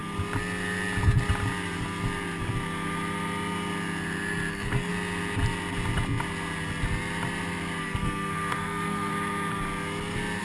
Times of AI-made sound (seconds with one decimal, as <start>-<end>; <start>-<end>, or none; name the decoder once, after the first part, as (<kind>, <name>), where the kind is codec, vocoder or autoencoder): 4.5-4.9 (codec, SNAC); 7.8-9.1